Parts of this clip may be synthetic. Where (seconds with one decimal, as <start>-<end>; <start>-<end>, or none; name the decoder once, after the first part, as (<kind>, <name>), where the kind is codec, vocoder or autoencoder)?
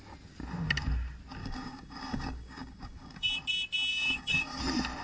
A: 1.4-3.3 (codec, DAC); 3.9-4.6